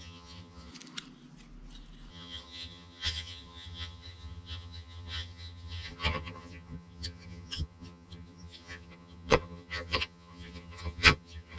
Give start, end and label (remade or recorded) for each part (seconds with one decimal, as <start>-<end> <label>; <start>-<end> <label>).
0.0-0.7 remade; 0.7-2.1 recorded; 2.1-11.6 remade